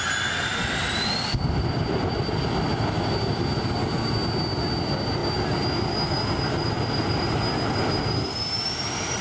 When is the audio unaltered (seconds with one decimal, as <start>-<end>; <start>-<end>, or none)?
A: 0.0-9.2